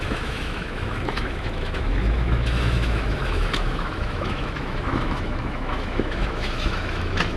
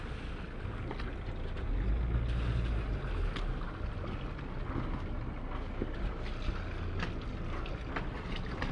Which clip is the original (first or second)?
second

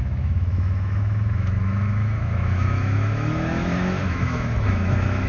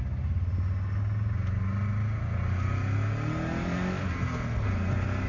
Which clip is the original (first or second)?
second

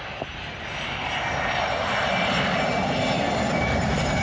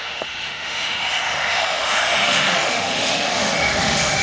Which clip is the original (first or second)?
first